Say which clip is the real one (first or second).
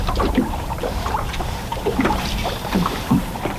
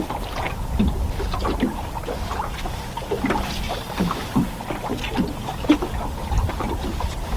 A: second